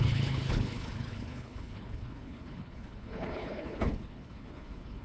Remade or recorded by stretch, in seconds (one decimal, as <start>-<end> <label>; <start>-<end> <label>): 0.0-5.0 remade